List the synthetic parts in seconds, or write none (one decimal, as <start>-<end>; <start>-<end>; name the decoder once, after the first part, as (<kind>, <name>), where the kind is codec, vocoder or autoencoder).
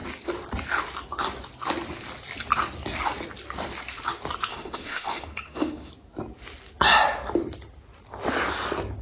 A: 4.5-5.9 (autoencoder, DAC-VAE)